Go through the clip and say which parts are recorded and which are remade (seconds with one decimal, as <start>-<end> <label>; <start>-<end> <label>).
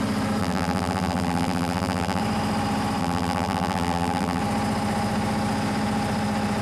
0.0-0.4 recorded; 0.4-2.2 remade; 2.2-3.0 recorded; 3.0-4.4 remade; 4.4-6.6 recorded